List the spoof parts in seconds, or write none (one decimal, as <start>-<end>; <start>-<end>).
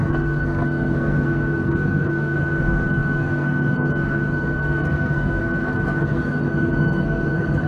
0.0-7.7